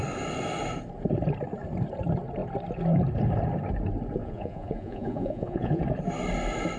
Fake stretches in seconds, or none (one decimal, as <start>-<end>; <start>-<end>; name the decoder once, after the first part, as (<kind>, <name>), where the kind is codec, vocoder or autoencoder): 4.2-5.8 (vocoder, Vocos)